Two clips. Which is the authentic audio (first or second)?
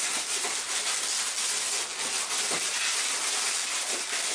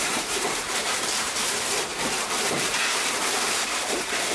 first